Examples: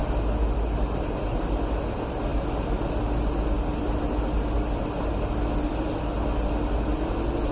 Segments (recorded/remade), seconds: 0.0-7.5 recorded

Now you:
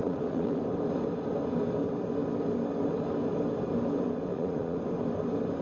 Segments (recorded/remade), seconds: 0.0-0.6 remade; 0.6-4.3 recorded; 4.3-4.8 remade; 4.8-5.6 recorded